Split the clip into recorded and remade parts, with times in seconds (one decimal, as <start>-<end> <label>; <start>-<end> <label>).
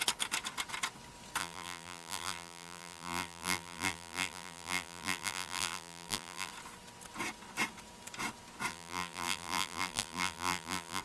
0.0-1.4 recorded; 1.4-6.5 remade; 6.5-8.7 recorded; 8.7-11.0 remade